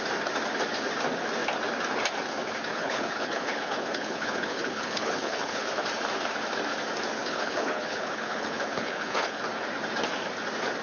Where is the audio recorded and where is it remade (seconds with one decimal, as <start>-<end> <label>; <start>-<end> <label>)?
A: 0.0-2.7 recorded; 2.7-5.7 remade; 5.7-7.2 recorded; 7.2-9.4 remade; 9.4-10.8 recorded